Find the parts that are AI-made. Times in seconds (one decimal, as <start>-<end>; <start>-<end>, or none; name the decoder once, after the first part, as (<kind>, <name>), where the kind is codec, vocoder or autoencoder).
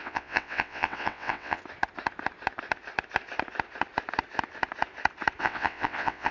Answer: 0.0-1.6 (vocoder, WaveNeXt); 5.4-6.3